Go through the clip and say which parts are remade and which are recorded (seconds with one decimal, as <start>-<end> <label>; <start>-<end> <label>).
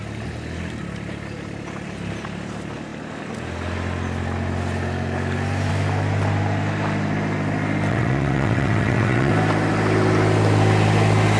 0.0-7.9 recorded; 7.9-9.3 remade; 9.3-11.4 recorded